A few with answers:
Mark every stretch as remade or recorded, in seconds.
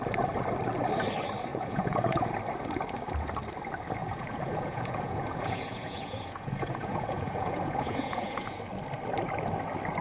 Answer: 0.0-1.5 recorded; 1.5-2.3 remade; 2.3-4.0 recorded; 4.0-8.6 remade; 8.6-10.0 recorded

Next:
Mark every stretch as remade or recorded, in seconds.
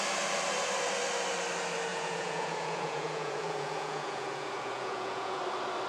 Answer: 0.0-1.9 recorded; 1.9-5.4 remade; 5.4-5.9 recorded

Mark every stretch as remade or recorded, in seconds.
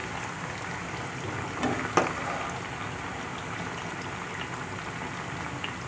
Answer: 0.0-5.9 recorded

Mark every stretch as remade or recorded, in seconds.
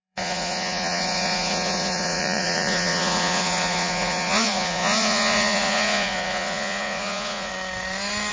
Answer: 0.0-7.5 remade; 7.5-8.3 recorded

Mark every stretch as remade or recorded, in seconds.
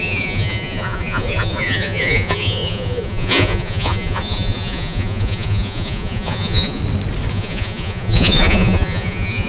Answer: 0.0-6.8 remade; 6.8-7.3 recorded; 7.3-9.5 remade